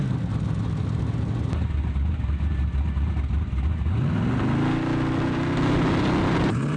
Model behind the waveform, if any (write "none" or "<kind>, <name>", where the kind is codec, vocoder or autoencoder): none